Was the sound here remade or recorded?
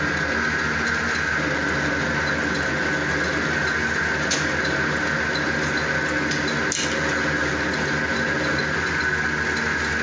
recorded